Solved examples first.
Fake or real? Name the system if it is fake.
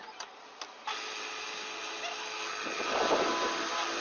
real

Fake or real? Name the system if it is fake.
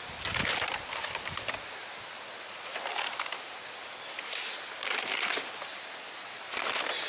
real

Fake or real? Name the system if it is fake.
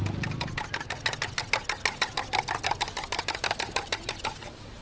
real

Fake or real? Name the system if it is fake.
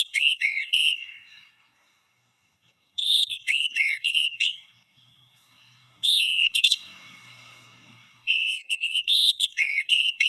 fake, codec, SNAC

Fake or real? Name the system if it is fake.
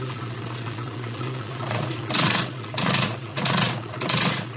fake, vocoder, Vocos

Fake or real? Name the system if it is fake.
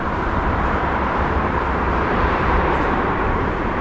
fake, vocoder, BigVGAN v2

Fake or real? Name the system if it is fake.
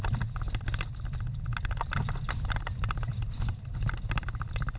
real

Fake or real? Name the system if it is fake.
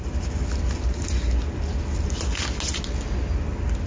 real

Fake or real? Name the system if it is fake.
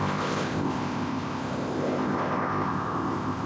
fake, codec, ZipCodec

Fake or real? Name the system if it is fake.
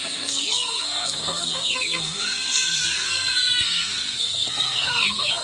fake, codec, SNAC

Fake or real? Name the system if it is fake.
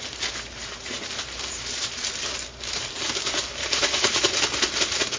fake, vocoder, BigVGAN v2